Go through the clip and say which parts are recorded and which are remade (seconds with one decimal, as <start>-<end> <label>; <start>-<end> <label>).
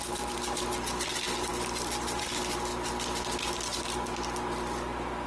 0.0-5.3 recorded